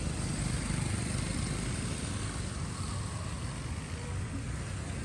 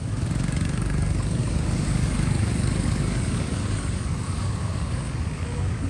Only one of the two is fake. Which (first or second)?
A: second